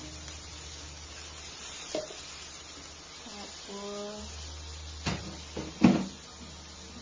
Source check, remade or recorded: recorded